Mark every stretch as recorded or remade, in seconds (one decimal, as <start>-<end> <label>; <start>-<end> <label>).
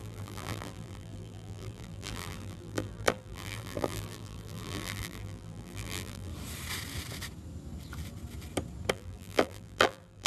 0.0-6.3 remade; 6.3-8.9 recorded; 8.9-10.3 remade